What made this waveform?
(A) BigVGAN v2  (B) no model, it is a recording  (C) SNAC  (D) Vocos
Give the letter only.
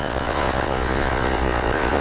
D